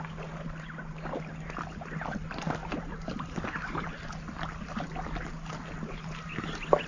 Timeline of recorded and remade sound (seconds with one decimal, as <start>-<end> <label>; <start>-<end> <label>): 0.0-6.9 recorded